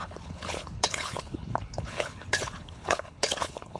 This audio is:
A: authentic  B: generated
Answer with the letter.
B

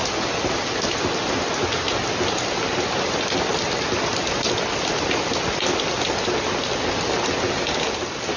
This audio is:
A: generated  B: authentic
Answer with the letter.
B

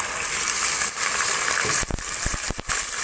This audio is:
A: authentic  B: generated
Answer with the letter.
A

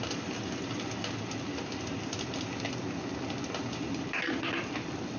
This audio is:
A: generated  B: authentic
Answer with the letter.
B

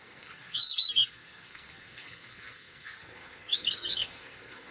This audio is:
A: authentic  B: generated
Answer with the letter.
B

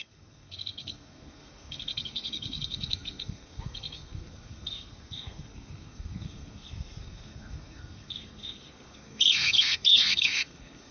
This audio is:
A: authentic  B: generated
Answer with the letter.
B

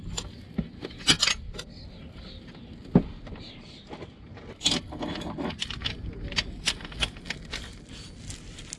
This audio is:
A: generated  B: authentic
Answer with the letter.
B